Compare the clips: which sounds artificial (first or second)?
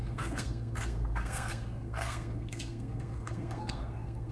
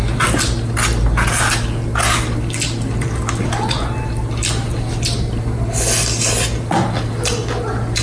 first